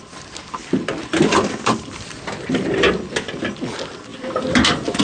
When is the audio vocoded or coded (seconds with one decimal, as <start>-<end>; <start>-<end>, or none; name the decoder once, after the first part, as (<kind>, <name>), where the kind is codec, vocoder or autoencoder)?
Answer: none